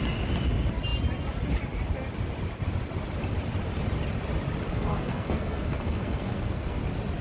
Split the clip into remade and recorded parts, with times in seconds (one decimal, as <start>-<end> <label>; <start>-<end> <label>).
0.0-4.7 recorded; 4.7-6.8 remade; 6.8-7.2 recorded